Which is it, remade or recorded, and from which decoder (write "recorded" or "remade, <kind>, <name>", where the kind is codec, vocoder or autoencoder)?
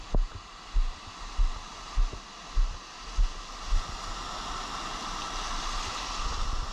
recorded